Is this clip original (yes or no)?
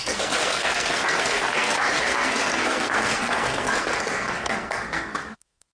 no